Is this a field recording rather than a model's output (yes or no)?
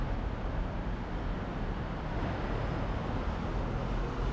yes